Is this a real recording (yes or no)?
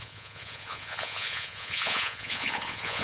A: no